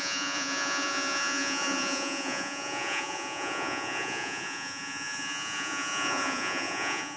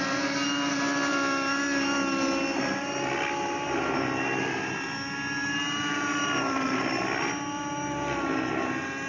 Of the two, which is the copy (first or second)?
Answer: first